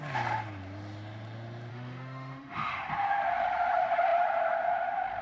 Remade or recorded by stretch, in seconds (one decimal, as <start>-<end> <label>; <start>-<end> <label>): 0.0-1.7 recorded; 1.7-2.9 remade; 2.9-5.2 recorded